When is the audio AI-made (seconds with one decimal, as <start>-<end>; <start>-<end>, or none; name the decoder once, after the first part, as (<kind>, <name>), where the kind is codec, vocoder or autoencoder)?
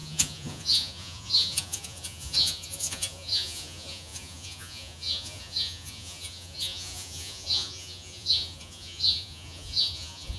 0.0-10.4 (vocoder, Vocos)